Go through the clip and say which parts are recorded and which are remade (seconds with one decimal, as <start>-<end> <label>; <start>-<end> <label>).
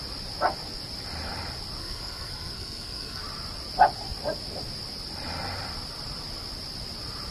0.0-1.8 recorded; 1.8-3.2 remade; 3.2-7.3 recorded